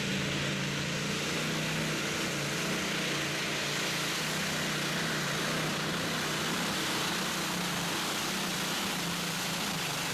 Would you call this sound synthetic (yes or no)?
no